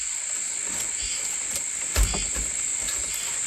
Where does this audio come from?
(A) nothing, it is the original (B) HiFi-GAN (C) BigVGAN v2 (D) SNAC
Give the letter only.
A